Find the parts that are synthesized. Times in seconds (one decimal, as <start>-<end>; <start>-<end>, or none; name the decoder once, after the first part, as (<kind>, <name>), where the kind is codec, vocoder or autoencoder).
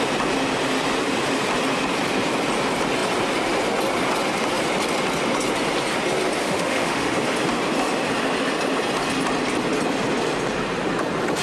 6.4-7.1 (autoencoder, DAC-VAE)